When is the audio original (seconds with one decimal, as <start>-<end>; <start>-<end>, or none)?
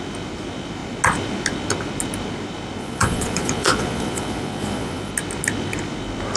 0.0-2.8; 5.1-6.4